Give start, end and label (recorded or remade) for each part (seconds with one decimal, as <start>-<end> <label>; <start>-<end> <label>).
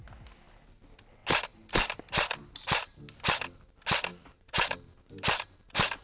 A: 0.0-4.1 recorded; 4.1-6.0 remade